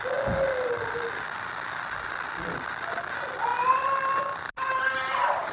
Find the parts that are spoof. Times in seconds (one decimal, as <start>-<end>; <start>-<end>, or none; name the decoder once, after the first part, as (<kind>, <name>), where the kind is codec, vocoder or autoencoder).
none